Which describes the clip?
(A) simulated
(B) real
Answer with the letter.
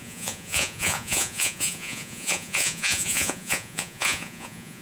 A